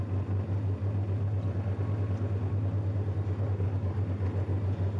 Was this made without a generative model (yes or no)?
yes